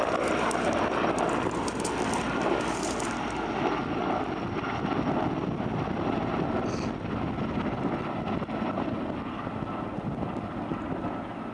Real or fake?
real